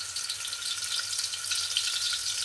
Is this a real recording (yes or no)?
yes